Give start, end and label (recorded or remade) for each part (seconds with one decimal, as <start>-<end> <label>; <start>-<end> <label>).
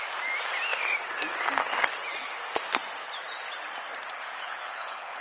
0.0-4.1 recorded; 4.1-5.2 remade